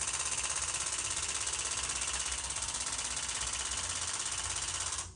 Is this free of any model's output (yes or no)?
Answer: yes